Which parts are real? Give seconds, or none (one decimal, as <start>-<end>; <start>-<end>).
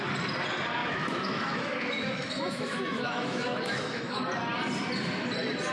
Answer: 0.0-0.8; 4.2-5.7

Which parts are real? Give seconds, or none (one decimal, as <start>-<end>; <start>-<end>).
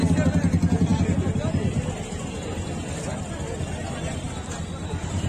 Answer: 0.0-5.3